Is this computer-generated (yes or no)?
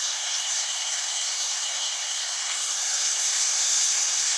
yes